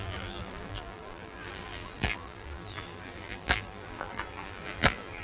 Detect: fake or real fake